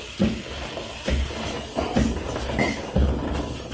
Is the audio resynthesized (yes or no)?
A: no